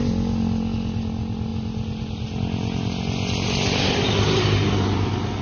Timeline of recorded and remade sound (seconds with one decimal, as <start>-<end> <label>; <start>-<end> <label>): 0.0-5.4 recorded